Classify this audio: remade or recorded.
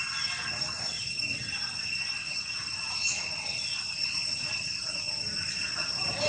recorded